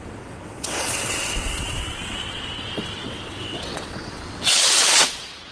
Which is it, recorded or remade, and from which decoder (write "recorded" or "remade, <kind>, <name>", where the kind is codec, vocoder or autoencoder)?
remade, vocoder, WaveNeXt